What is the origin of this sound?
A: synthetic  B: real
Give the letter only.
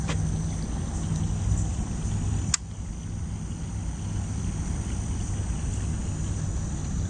B